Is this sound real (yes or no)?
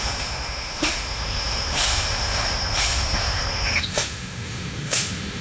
no